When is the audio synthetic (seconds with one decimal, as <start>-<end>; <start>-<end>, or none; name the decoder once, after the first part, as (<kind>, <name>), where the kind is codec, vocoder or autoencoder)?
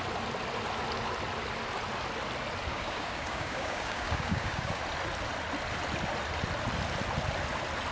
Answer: 2.7-4.8 (codec, DAC)